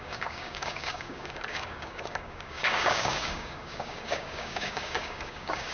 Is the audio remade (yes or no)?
yes